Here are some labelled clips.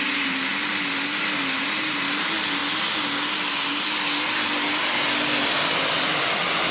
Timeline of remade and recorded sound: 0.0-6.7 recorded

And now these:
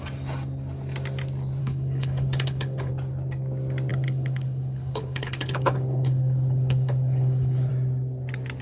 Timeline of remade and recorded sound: 0.0-1.6 recorded; 1.6-2.9 remade; 2.9-3.9 recorded; 3.9-7.7 remade; 7.7-8.6 recorded

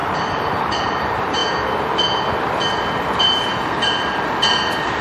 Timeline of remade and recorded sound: 0.0-1.4 remade; 1.4-3.2 recorded; 3.2-5.0 remade

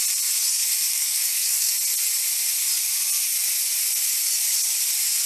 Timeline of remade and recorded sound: 0.0-0.9 recorded; 0.9-1.7 remade; 1.7-5.3 recorded

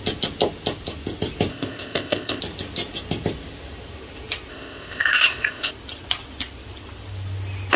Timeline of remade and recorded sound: 0.0-1.5 recorded; 1.5-2.4 remade; 2.4-4.5 recorded; 4.5-5.7 remade; 5.7-7.8 recorded

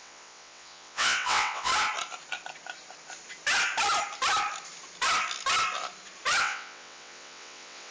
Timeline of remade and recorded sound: 0.0-1.7 remade; 1.7-6.4 recorded; 6.4-7.9 remade

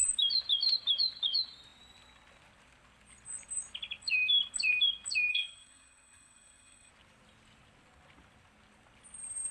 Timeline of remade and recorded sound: 0.0-5.3 recorded; 5.3-6.9 remade; 6.9-9.5 recorded

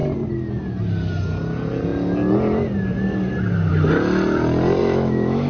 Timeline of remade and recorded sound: 0.0-4.8 recorded; 4.8-5.5 remade